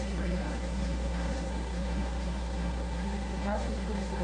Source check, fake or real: fake